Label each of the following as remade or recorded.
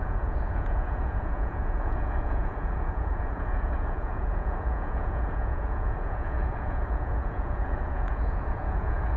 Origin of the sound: remade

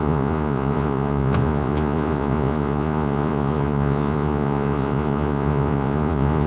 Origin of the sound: remade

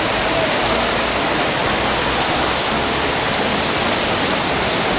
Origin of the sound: recorded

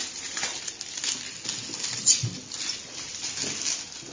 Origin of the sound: recorded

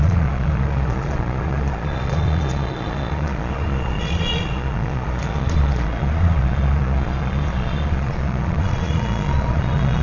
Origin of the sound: remade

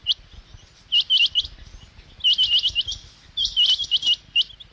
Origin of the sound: recorded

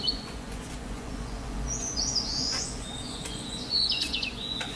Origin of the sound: remade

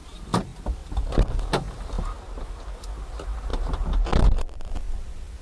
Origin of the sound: recorded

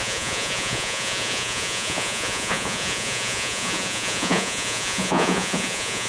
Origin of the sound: remade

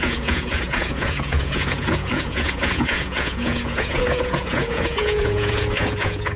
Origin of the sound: remade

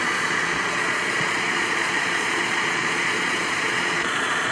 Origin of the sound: remade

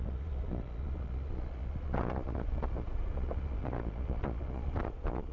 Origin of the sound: remade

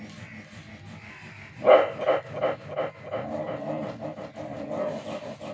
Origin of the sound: recorded